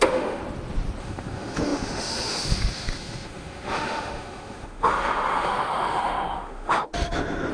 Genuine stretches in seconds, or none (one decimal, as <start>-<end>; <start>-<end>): 0.4-1.0; 6.9-7.5